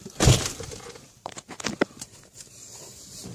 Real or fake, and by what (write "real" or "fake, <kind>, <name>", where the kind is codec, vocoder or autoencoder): fake, vocoder, BigVGAN v2